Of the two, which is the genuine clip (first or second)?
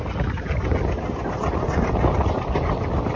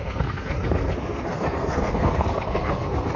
first